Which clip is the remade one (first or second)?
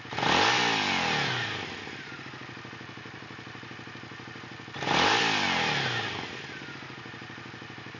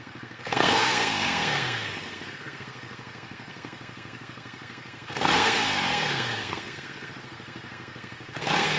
second